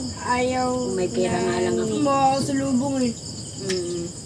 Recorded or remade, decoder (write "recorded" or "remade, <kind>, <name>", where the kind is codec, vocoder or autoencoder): recorded